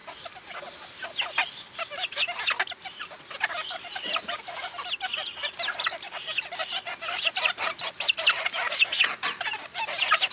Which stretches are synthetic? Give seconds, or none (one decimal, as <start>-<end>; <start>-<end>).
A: none